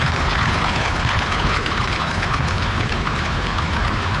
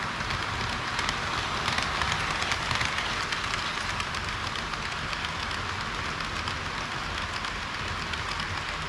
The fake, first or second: first